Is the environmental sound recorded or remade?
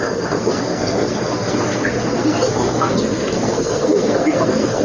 remade